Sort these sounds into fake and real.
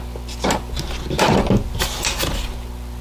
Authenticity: real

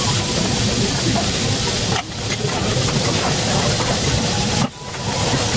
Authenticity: real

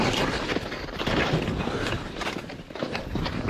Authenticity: real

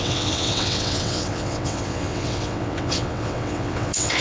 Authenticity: fake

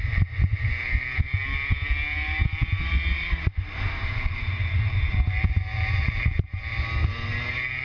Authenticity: real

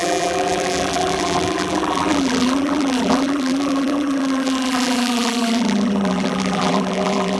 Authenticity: fake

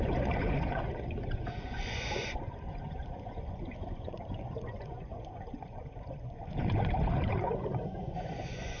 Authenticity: fake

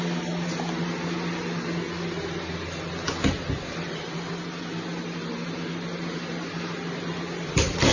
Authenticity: real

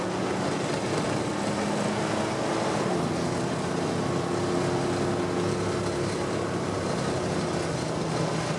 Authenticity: real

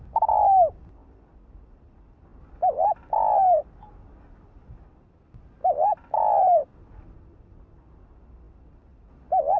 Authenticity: real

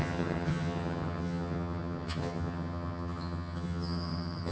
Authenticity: fake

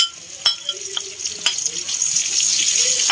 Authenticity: real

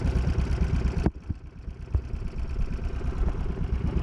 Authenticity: real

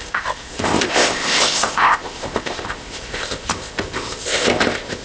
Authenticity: fake